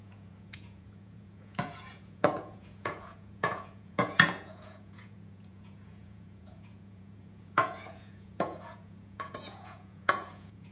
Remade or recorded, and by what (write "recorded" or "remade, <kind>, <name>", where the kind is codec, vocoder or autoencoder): remade, vocoder, Vocos